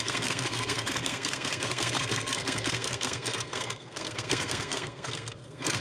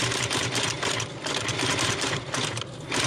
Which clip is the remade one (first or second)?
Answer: first